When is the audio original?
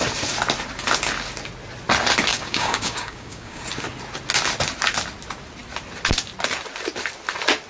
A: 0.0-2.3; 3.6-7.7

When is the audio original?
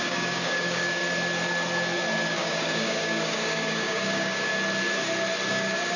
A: 1.0-2.3; 4.5-5.5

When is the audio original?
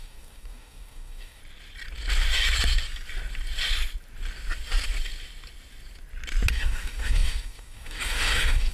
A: 1.4-6.5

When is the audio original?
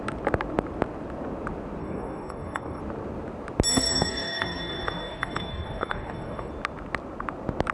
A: 0.0-1.8; 2.8-3.7; 6.5-7.7